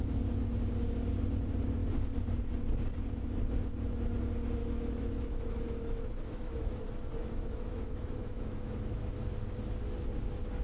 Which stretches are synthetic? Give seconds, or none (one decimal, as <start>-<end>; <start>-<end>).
4.6-6.8; 7.2-9.3

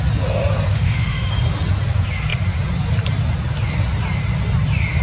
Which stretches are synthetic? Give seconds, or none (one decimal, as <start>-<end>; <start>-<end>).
0.7-1.3

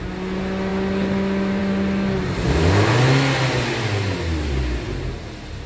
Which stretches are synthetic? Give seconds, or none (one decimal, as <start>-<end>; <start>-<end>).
none

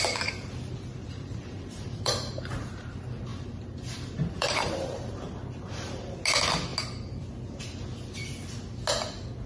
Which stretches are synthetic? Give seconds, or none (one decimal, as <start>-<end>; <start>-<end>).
1.0-2.9; 3.3-6.2

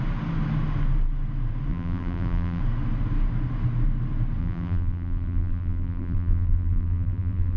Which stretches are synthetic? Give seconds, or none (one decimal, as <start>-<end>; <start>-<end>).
1.7-2.6; 4.4-7.6

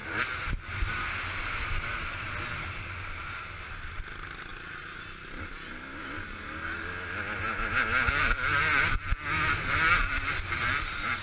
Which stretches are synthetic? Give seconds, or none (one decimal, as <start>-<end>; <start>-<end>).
none